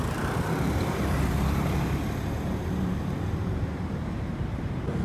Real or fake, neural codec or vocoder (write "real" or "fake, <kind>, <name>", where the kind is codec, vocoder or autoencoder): fake, vocoder, BigVGAN v2